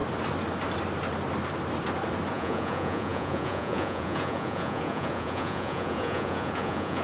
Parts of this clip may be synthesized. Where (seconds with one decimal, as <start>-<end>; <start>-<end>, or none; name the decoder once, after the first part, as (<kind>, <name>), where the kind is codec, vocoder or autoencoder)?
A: 2.3-7.0 (vocoder, Vocos)